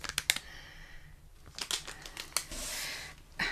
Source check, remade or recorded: recorded